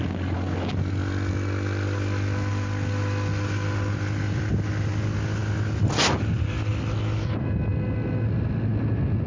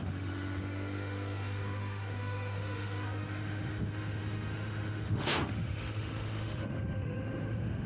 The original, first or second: first